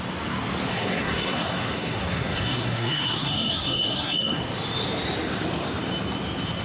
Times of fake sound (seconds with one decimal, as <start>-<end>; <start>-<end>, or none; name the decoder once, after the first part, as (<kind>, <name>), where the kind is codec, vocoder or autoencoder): 0.7-4.4 (codec, SNAC)